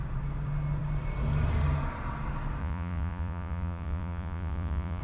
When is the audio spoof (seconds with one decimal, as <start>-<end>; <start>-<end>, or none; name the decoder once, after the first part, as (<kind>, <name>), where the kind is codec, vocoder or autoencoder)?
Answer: 2.6-5.0 (vocoder, Vocos)